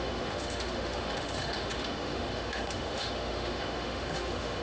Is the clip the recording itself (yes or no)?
no